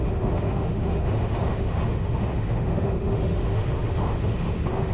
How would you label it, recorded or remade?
remade